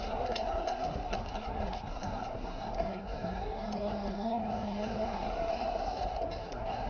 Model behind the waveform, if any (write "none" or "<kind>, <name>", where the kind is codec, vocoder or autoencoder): codec, SNAC